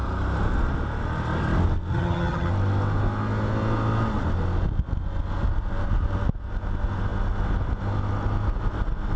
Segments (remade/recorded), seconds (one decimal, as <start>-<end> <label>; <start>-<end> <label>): 0.0-1.9 recorded; 1.9-2.5 remade; 2.5-9.2 recorded